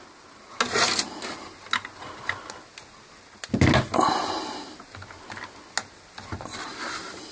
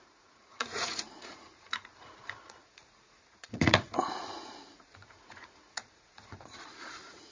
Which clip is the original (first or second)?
first